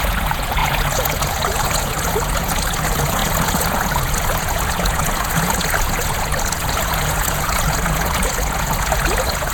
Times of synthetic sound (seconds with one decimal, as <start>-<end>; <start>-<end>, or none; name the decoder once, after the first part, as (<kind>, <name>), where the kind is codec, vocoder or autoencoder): 0.0-9.5 (vocoder, Vocos)